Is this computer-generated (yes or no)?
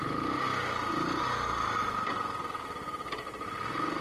no